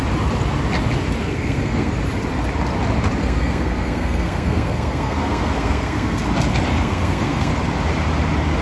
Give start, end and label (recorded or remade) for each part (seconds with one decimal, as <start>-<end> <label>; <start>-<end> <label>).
0.0-1.2 recorded; 1.2-1.9 remade; 1.9-3.2 recorded; 3.2-6.2 remade; 6.2-6.7 recorded; 6.7-7.5 remade; 7.5-8.6 recorded

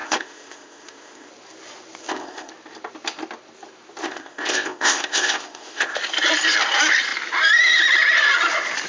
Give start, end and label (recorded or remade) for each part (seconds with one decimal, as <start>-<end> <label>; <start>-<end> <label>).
0.0-1.3 remade; 1.3-2.0 recorded; 2.0-2.5 remade; 2.5-4.0 recorded; 4.0-6.0 remade; 6.0-8.9 recorded

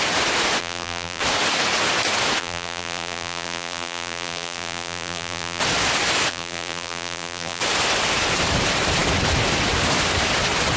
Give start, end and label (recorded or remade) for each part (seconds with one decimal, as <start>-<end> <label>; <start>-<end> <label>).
0.0-0.6 recorded; 0.6-1.2 remade; 1.2-2.4 recorded; 2.4-5.6 remade; 5.6-6.3 recorded; 6.3-7.6 remade; 7.6-10.8 recorded